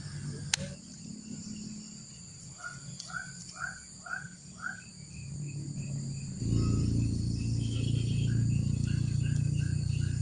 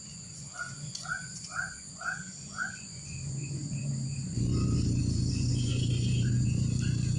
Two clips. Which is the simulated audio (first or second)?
second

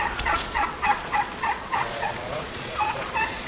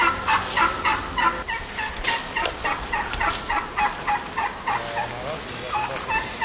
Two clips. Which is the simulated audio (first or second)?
first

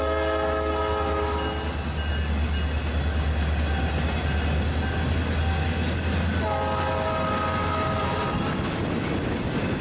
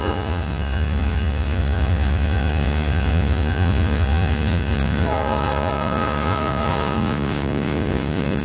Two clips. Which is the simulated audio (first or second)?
second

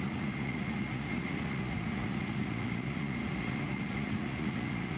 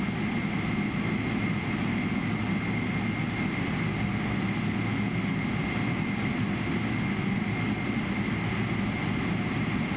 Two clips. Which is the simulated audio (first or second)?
first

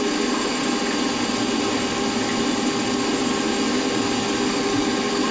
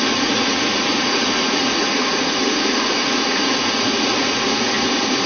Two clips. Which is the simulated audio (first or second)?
second